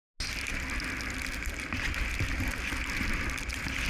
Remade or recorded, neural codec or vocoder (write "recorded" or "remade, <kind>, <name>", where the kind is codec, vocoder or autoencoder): recorded